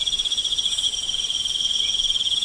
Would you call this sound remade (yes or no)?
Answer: yes